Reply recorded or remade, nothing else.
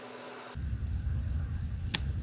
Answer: recorded